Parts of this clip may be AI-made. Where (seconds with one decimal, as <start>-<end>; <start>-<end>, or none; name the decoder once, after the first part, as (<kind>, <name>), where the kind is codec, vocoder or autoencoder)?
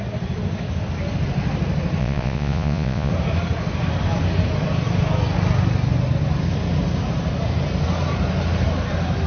2.0-3.1 (vocoder, Vocos)